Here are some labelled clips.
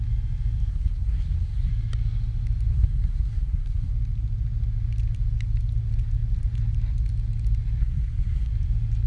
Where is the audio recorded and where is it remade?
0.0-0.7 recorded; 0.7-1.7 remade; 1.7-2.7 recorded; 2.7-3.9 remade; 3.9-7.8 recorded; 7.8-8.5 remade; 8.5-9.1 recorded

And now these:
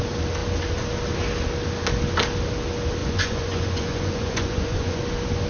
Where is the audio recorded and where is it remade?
0.0-3.0 recorded; 3.0-5.0 remade; 5.0-5.5 recorded

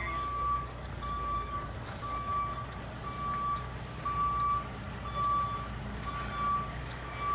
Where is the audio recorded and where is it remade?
0.0-2.3 remade; 2.3-6.7 recorded; 6.7-7.3 remade

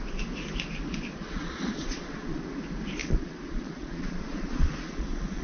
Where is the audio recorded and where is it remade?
0.0-1.2 recorded; 1.2-2.4 remade; 2.4-3.0 recorded; 3.0-5.4 remade

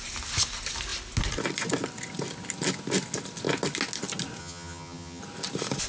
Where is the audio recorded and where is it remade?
0.0-4.4 recorded; 4.4-5.2 remade; 5.2-5.9 recorded

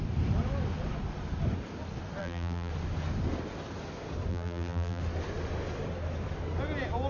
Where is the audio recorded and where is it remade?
0.0-2.2 recorded; 2.2-2.7 remade; 2.7-4.3 recorded; 4.3-5.0 remade; 5.0-7.1 recorded